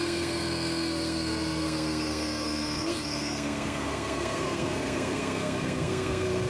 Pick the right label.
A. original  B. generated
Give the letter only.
B